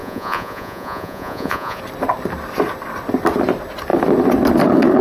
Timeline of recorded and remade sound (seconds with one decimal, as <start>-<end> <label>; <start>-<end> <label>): 0.0-1.8 remade; 1.8-5.0 recorded